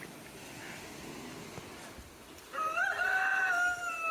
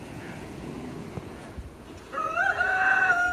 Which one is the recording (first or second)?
first